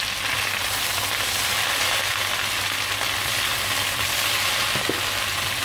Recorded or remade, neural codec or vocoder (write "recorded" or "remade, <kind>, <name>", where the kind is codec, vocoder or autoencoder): recorded